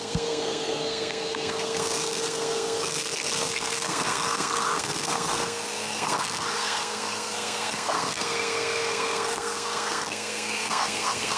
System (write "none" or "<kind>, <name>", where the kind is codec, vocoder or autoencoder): codec, SNAC